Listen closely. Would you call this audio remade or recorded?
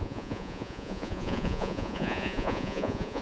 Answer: remade